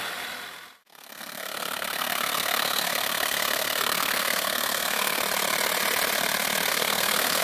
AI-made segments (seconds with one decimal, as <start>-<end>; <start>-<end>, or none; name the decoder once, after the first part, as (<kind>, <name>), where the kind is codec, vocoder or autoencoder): 0.8-5.2 (codec, SNAC); 6.7-7.4